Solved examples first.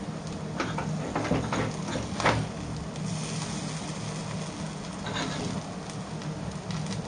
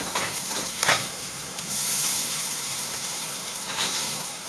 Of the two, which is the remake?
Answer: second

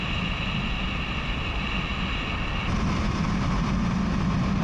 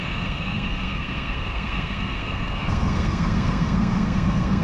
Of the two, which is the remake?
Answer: second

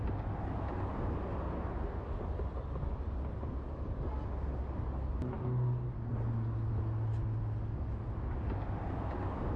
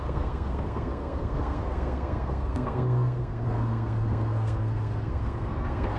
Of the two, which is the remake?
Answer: second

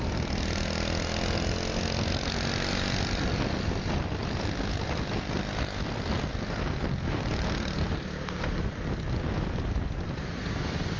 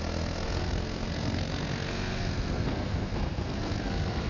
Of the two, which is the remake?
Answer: second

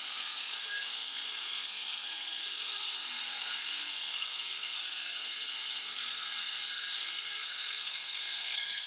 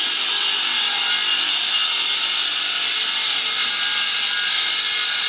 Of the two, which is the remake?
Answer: first